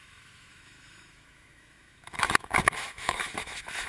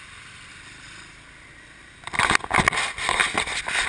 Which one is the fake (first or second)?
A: first